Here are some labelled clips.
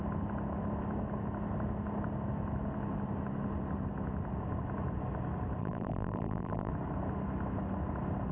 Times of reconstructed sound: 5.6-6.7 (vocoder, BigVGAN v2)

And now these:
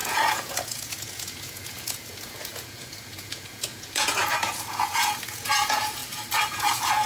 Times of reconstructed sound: 0.0-6.0 (vocoder, Vocos); 6.5-7.1

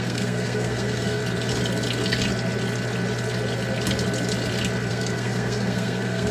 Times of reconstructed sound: 0.0-1.2 (codec, SNAC); 4.9-6.3

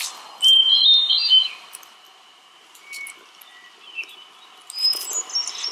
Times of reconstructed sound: 0.7-1.5 (vocoder, BigVGAN v2)

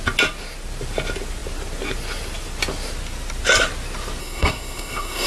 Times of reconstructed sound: 4.2-5.3 (codec, SNAC)